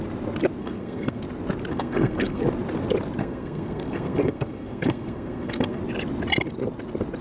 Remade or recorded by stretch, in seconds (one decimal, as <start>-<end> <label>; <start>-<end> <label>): 0.0-0.6 recorded; 0.6-1.2 remade; 1.2-1.7 recorded; 1.7-2.4 remade; 2.4-3.2 recorded; 3.2-5.8 remade; 5.8-7.2 recorded